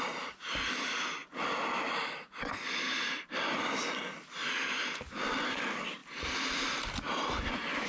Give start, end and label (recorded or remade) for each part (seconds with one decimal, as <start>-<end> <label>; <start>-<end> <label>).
0.0-7.9 recorded